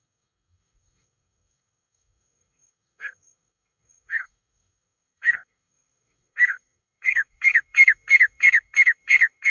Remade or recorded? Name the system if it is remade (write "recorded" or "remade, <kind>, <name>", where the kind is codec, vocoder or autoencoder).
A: remade, codec, DAC